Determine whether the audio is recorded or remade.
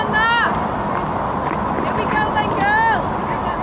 recorded